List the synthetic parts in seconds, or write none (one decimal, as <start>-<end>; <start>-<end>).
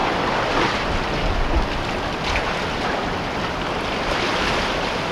none